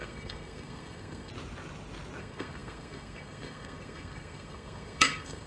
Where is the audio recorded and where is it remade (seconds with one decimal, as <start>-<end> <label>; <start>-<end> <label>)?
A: 0.0-1.3 remade; 1.3-2.2 recorded; 2.2-5.5 remade